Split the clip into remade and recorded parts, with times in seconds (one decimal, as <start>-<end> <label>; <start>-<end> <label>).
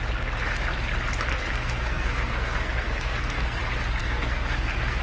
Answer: 0.0-1.3 recorded; 1.3-3.6 remade; 3.6-4.0 recorded; 4.0-5.0 remade